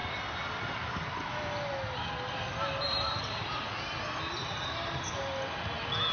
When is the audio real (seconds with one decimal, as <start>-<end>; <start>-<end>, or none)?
0.0-6.1